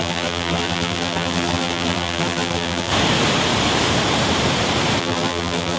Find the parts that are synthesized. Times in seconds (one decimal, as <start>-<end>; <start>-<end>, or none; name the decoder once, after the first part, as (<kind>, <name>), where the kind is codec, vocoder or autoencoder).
0.0-2.9 (vocoder, BigVGAN v2); 5.0-5.8